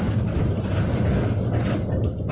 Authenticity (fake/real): real